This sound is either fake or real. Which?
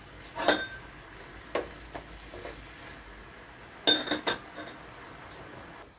real